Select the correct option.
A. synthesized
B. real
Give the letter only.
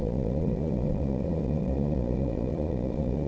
A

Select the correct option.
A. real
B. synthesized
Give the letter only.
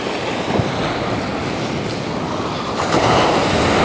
A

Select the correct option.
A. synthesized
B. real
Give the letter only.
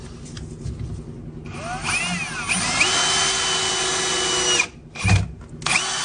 B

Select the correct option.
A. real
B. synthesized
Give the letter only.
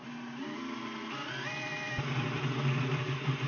A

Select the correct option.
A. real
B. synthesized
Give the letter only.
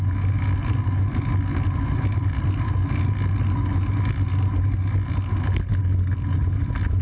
A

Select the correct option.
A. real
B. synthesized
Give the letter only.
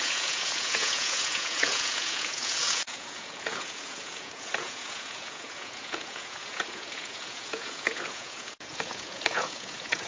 B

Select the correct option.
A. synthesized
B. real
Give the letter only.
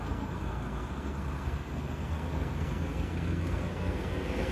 A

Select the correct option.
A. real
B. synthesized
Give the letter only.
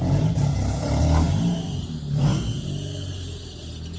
A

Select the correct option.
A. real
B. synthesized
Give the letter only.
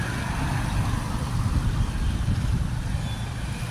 A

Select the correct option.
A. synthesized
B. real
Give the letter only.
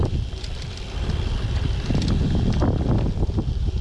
A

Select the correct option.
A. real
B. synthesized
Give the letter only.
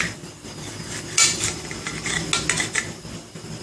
A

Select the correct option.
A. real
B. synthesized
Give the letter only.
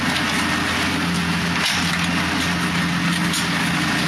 A